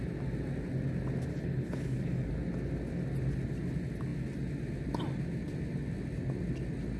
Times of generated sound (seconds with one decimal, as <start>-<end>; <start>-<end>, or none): 1.3-2.3

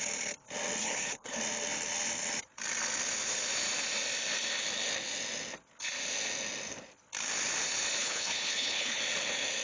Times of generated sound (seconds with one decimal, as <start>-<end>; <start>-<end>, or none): 0.8-1.4; 8.0-9.0